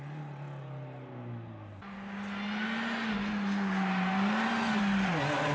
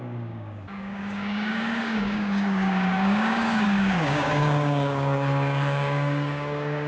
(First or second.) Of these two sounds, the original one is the first